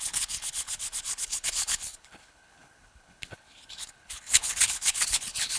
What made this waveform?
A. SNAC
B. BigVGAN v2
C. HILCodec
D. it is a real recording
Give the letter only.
C